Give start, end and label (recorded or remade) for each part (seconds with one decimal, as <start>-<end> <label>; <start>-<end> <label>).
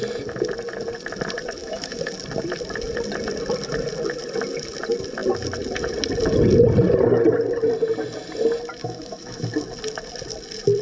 0.0-1.6 recorded; 1.6-2.1 remade; 2.1-8.8 recorded; 8.8-9.5 remade; 9.5-10.8 recorded